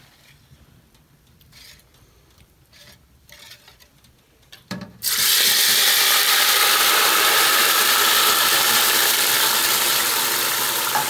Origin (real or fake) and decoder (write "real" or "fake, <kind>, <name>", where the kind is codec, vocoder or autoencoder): fake, vocoder, BigVGAN v2